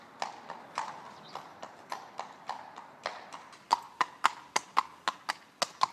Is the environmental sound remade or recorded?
recorded